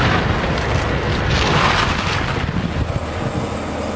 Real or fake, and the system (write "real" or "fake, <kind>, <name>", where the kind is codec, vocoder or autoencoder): real